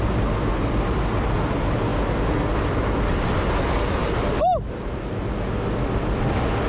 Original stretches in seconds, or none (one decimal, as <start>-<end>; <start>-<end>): 0.0-4.0; 5.2-6.7